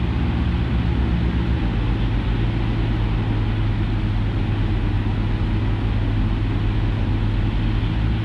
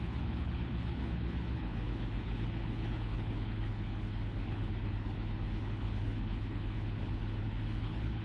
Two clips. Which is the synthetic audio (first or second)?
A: second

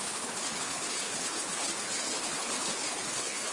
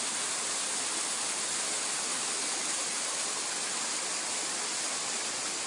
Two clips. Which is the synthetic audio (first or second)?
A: first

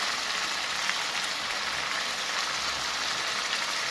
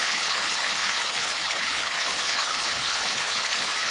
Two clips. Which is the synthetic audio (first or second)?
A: second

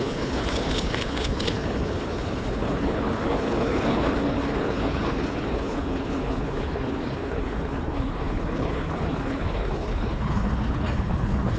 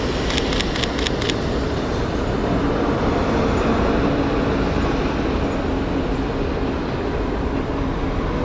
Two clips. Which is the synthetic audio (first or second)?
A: first